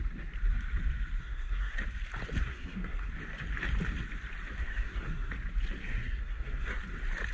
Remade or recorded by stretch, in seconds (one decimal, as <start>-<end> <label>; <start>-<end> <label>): 0.0-1.2 recorded; 1.2-1.8 remade; 1.8-2.4 recorded; 2.4-3.1 remade; 3.1-4.6 recorded; 4.6-5.3 remade; 5.3-5.8 recorded; 5.8-6.8 remade; 6.8-7.3 recorded